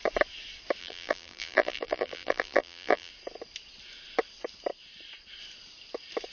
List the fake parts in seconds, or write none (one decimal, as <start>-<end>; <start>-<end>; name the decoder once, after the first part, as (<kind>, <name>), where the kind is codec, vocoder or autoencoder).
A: 0.8-3.1 (vocoder, BigVGAN v2)